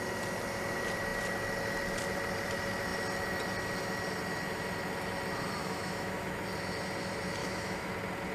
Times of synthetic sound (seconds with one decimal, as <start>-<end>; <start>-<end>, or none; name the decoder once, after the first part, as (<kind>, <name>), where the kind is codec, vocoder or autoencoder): 5.6-6.3 (autoencoder, DAC-VAE); 7.4-7.9